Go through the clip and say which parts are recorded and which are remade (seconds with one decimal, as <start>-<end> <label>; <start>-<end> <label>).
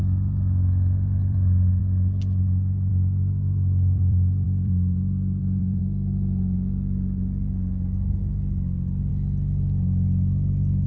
0.0-1.2 recorded; 1.2-1.8 remade; 1.8-2.9 recorded; 2.9-5.8 remade; 5.8-10.9 recorded